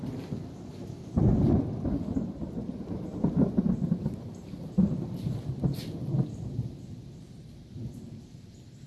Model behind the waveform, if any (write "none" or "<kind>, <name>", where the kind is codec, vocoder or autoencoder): none